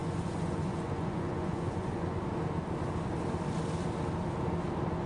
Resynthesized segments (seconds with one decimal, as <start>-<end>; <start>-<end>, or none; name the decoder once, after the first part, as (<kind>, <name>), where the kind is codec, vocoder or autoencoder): 0.0-2.2 (vocoder, Vocos)